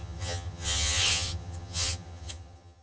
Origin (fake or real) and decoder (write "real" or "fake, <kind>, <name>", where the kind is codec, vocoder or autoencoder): fake, vocoder, HiFi-GAN